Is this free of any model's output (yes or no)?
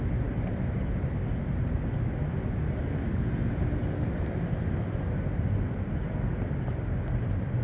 yes